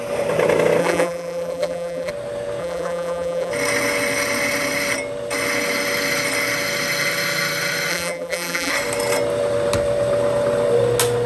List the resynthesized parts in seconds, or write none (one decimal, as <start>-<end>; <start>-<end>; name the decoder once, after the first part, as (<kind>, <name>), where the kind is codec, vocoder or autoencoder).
0.8-2.1 (vocoder, BigVGAN v2); 2.6-3.5; 7.9-8.7